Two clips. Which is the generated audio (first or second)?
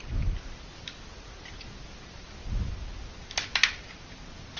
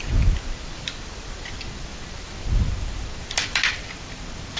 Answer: second